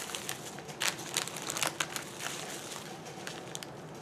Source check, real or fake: real